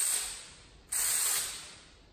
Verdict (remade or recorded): recorded